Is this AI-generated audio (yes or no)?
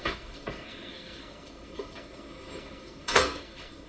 yes